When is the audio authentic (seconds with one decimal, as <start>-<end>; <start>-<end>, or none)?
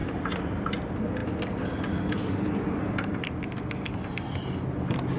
0.0-5.2